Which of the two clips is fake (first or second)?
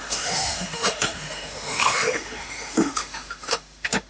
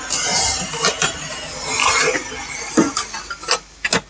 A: first